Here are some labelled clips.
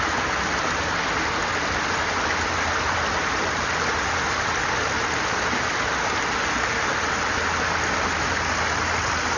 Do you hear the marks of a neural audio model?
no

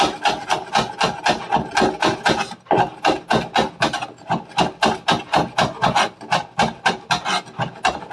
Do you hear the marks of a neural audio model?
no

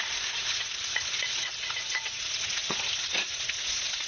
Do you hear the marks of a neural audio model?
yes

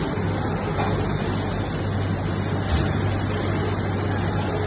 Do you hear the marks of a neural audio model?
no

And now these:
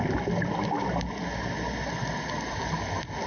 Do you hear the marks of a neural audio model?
no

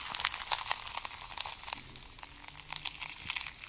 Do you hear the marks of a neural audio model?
no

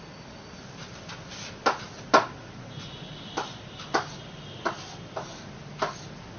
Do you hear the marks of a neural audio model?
no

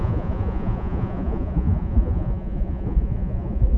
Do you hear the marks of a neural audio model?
yes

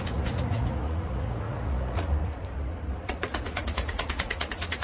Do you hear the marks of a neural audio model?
yes